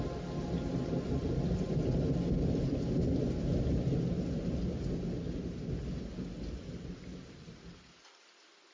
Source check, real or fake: real